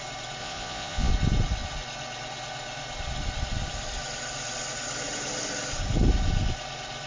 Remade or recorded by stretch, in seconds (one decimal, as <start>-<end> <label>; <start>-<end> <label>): 0.0-0.4 recorded; 0.4-1.1 remade; 1.1-7.1 recorded

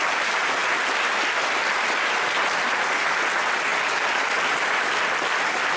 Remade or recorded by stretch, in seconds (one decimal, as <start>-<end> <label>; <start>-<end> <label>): 0.0-5.8 recorded

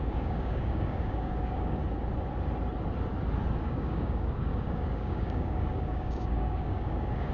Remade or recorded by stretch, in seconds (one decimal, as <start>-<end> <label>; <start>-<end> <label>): 0.0-1.8 remade; 1.8-3.6 recorded; 3.6-7.3 remade

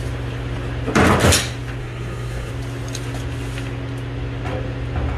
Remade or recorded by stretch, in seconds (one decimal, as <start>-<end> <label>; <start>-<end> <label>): 0.0-1.8 recorded; 1.8-2.5 remade; 2.5-5.2 recorded

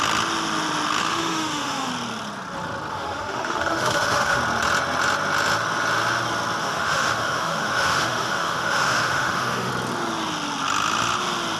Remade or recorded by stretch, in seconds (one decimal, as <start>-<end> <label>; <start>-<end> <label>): 0.0-1.0 recorded; 1.0-1.9 remade; 1.9-2.9 recorded; 2.9-4.4 remade; 4.4-6.6 recorded; 6.6-9.7 remade; 9.7-11.6 recorded